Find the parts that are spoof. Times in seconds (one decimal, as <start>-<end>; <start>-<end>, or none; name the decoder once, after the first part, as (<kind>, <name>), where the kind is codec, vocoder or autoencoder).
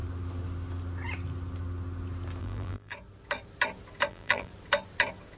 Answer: 2.4-2.9 (vocoder, BigVGAN v2); 4.1-4.5